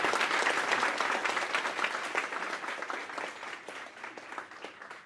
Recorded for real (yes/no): yes